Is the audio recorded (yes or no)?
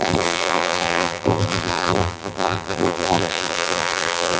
no